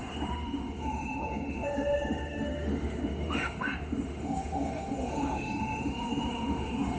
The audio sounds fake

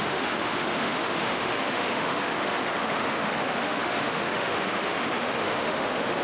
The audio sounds fake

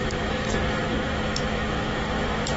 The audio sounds fake